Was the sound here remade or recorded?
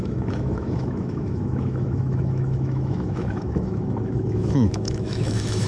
remade